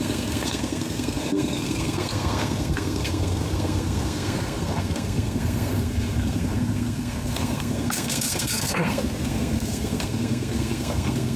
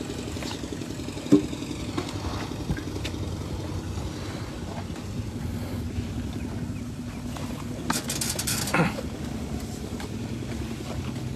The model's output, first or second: first